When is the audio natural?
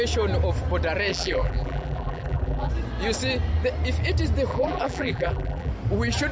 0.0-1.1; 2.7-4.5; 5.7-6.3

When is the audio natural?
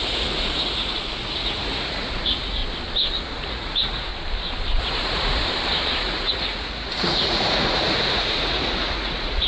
2.6-3.5; 4.1-4.8; 5.4-6.0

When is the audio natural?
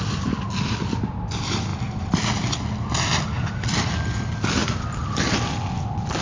0.0-4.6; 5.2-6.2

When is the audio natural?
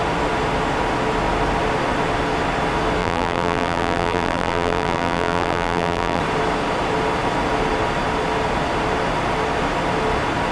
0.0-3.0; 6.2-10.5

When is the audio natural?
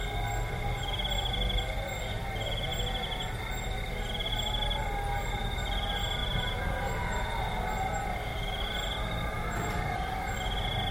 0.0-6.2; 6.9-8.3; 10.2-10.9